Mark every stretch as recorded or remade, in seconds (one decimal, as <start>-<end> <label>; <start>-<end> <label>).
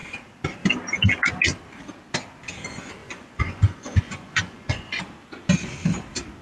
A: 0.0-3.0 recorded; 3.0-5.0 remade; 5.0-6.4 recorded